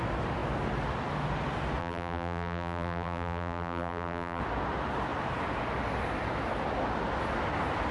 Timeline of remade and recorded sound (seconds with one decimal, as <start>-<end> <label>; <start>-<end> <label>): 0.0-1.8 recorded; 1.8-4.4 remade; 4.4-7.9 recorded